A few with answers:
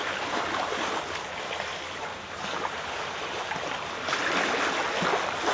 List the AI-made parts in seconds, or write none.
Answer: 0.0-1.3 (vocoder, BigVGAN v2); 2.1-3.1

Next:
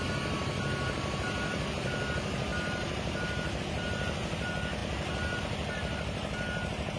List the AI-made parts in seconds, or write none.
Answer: none

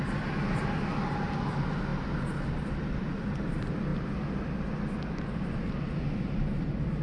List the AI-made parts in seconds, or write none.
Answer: none